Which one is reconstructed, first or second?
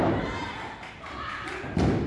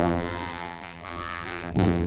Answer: second